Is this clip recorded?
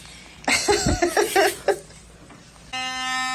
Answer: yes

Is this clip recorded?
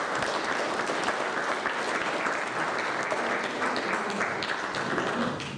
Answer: yes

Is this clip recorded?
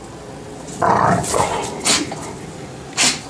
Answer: yes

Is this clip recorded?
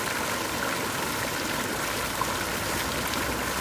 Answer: yes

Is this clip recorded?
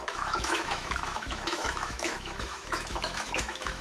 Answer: no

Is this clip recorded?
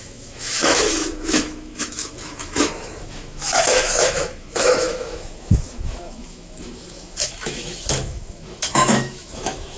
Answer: no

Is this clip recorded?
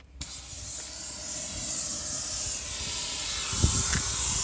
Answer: yes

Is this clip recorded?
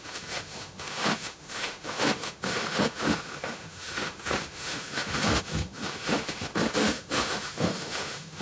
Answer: no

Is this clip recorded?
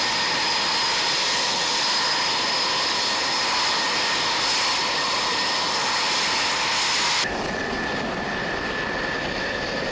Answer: yes